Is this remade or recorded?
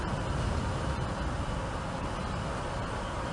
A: recorded